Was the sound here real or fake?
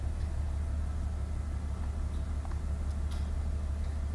real